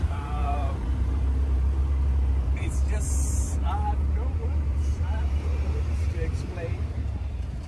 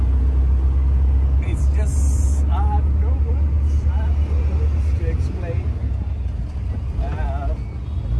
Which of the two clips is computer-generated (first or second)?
first